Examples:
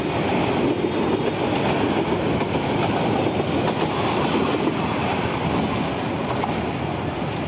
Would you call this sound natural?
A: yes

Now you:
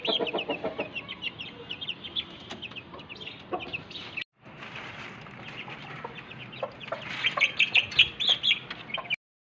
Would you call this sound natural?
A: yes